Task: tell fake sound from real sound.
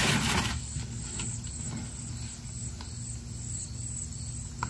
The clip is real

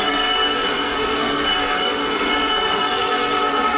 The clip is fake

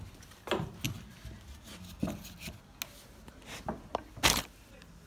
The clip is real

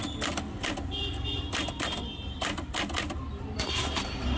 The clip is real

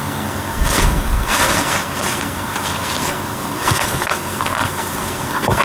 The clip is fake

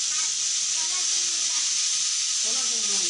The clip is real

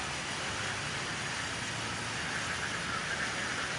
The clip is real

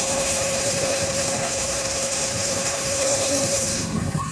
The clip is fake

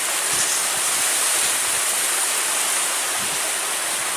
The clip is real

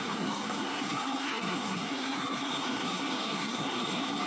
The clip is fake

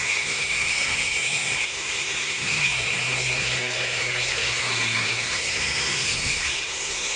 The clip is fake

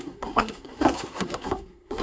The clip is fake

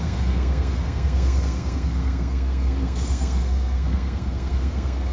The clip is fake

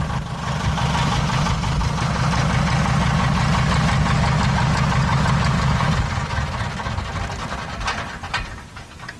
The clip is real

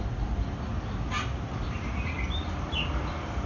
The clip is real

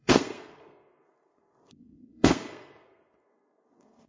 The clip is fake